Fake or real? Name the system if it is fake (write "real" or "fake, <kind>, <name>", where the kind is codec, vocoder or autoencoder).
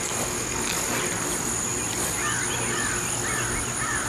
real